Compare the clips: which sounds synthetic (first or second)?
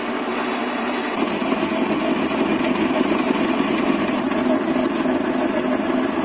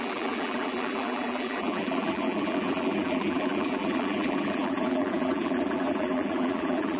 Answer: second